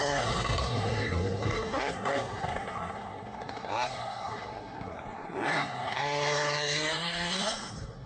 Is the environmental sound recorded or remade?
remade